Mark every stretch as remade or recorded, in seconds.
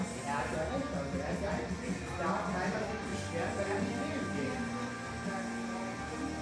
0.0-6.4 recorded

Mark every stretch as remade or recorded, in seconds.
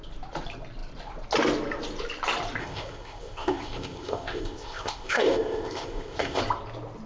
0.0-2.6 recorded; 2.6-6.4 remade; 6.4-7.1 recorded